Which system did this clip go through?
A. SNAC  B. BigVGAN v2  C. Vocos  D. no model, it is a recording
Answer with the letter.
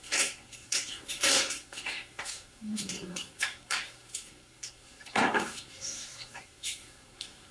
A